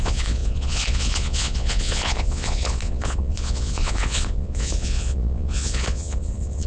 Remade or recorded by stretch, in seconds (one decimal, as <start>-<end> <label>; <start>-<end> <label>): 0.0-6.7 remade